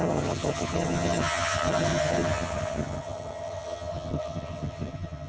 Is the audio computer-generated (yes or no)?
yes